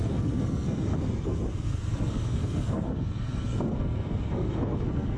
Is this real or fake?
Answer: fake